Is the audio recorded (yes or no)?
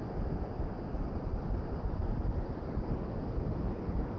yes